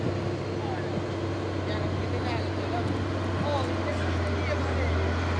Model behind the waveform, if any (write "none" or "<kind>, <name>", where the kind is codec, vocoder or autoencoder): none